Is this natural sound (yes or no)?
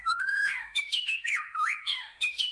no